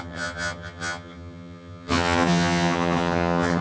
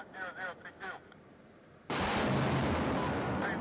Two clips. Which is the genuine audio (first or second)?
second